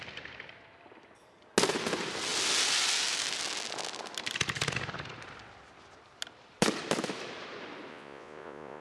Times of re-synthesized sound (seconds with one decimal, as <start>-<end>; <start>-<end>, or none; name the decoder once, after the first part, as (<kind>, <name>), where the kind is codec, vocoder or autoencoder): 7.9-8.8 (vocoder, Vocos)